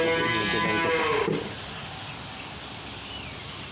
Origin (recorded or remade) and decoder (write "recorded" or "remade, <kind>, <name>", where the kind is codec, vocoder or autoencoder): recorded